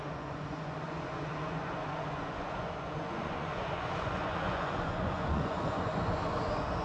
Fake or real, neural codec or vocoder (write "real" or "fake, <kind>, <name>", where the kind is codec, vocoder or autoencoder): fake, vocoder, Vocos